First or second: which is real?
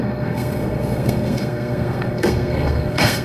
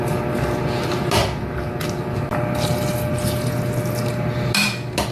second